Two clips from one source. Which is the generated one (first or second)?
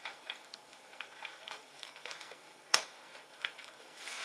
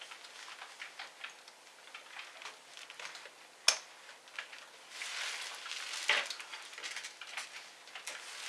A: first